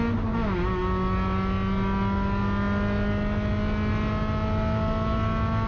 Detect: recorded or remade recorded